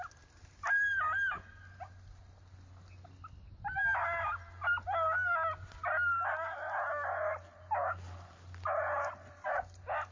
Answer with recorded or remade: recorded